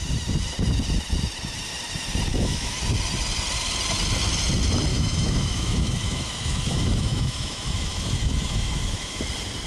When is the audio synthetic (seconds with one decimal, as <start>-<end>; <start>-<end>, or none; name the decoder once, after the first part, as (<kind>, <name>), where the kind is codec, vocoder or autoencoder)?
2.3-2.8 (autoencoder, DAC-VAE); 4.9-9.2